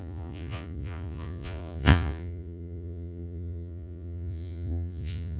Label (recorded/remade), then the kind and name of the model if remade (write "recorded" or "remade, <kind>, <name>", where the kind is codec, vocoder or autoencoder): remade, vocoder, Vocos